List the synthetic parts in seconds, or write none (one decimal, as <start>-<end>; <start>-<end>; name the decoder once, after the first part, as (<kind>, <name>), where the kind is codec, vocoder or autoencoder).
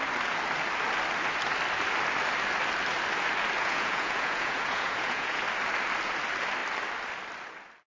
3.6-5.4 (vocoder, Vocos)